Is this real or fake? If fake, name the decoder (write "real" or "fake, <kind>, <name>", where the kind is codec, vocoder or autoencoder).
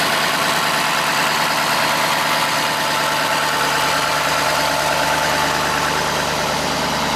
real